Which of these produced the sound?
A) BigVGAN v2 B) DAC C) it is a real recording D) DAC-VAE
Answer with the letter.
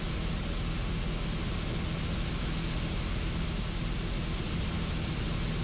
C